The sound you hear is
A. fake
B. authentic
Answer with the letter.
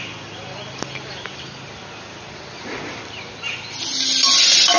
B